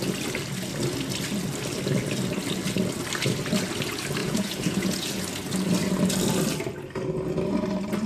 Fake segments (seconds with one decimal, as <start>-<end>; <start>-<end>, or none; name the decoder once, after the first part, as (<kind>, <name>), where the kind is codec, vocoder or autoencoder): 4.2-5.2 (vocoder, Vocos)

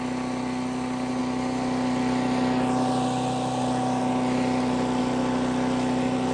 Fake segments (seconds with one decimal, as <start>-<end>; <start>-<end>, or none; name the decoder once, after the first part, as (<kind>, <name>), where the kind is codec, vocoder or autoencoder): none

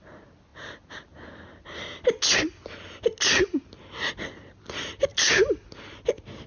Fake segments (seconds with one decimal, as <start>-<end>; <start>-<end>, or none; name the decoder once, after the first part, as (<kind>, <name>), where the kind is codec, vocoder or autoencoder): none

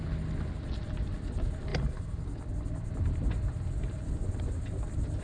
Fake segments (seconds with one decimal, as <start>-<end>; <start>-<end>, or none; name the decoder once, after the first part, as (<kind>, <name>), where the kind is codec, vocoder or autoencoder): none

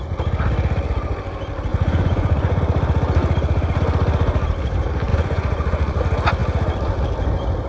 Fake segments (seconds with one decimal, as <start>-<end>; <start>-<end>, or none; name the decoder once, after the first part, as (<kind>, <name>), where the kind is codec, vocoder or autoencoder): 1.7-2.6 (vocoder, Vocos); 5.1-6.0